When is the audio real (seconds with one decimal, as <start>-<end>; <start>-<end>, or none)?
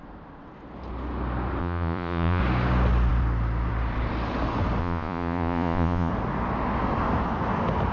0.0-1.6; 2.4-4.8; 6.1-7.9